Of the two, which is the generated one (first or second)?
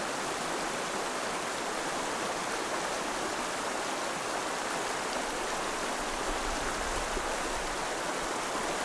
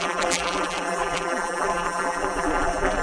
second